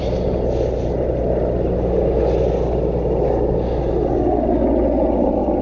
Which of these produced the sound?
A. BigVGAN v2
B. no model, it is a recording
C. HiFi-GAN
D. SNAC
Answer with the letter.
B